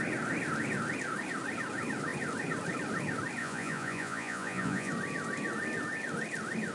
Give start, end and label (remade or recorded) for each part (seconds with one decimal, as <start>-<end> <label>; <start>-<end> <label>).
0.0-3.4 recorded; 3.4-4.9 remade; 4.9-6.7 recorded